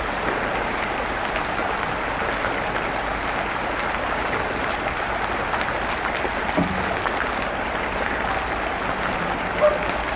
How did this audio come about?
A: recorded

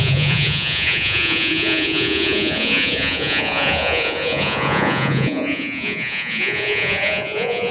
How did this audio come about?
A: remade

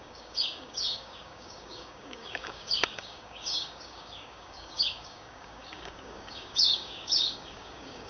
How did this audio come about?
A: remade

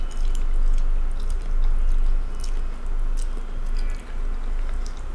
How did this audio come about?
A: recorded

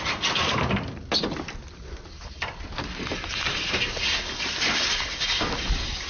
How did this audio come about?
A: recorded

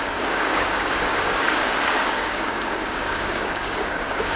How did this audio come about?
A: remade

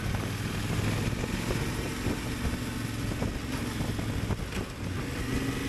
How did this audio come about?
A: recorded